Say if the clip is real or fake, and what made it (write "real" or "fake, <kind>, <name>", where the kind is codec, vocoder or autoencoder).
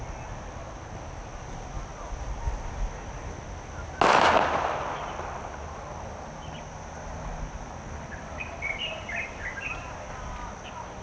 real